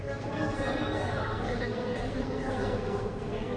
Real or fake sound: fake